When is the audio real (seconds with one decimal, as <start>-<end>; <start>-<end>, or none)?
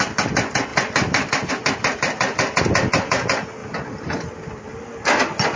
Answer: 0.0-0.7; 1.5-5.6